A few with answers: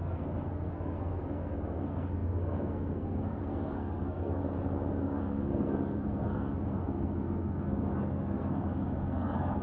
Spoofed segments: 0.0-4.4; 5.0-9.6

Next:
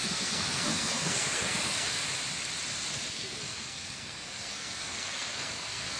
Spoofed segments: 0.0-2.0; 3.1-6.0